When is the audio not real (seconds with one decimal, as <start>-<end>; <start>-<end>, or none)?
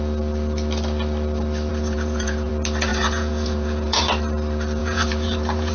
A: 1.7-2.5; 2.9-4.0; 4.8-5.7